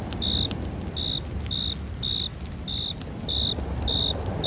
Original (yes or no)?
yes